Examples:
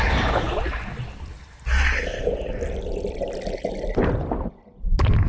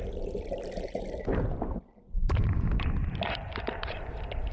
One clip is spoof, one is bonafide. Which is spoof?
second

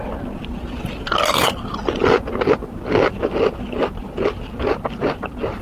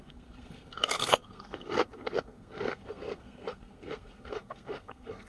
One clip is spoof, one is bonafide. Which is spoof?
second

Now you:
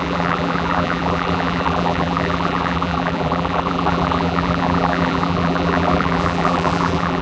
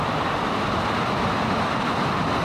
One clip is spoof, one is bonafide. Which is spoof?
first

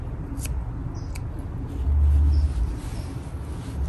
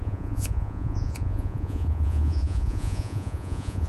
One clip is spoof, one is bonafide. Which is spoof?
second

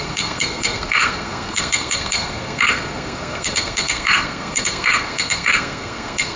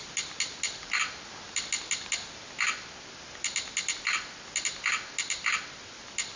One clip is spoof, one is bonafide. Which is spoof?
first